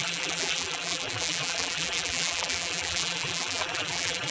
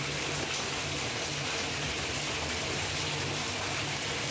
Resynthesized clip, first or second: first